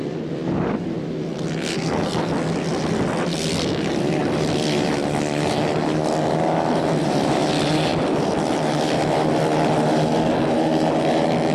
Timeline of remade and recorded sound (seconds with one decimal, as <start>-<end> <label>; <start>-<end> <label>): 0.0-1.7 recorded; 1.7-2.2 remade; 2.2-11.5 recorded